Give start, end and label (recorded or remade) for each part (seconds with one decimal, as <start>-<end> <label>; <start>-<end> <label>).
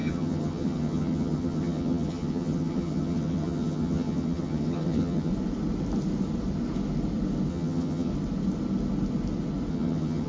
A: 0.0-5.3 remade; 5.3-7.5 recorded; 7.5-8.1 remade; 8.1-9.7 recorded; 9.7-10.3 remade